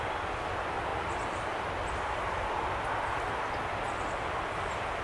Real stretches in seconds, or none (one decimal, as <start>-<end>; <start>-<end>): 0.0-5.0